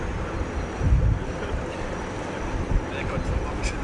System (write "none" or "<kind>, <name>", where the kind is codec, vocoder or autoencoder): none